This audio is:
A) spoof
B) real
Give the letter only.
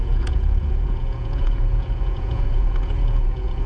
A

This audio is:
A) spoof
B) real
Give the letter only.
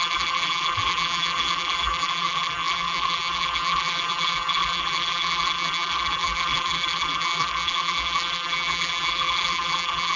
A